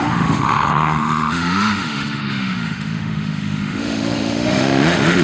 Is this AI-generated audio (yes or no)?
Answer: yes